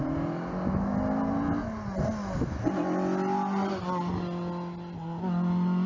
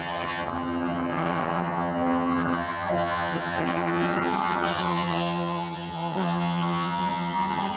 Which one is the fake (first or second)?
second